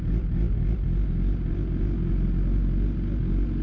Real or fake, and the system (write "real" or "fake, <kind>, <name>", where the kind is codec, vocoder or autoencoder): real